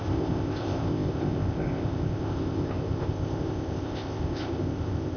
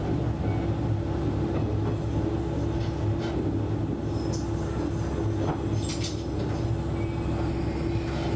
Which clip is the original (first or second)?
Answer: second